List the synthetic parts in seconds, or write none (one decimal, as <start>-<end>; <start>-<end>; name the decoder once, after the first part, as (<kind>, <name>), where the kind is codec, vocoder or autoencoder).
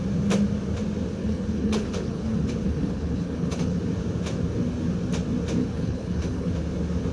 1.2-3.8 (codec, HILCodec); 5.6-6.5